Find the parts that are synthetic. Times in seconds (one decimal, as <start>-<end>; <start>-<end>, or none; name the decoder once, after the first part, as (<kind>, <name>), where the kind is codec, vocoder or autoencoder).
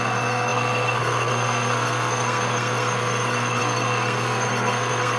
0.0-5.2 (codec, SNAC)